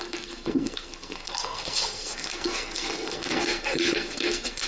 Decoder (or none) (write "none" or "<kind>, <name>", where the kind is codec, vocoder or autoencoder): codec, SNAC